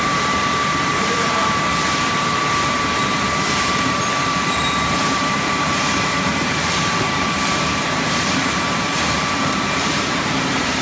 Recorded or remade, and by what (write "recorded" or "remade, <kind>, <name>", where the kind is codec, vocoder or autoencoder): remade, vocoder, BigVGAN v2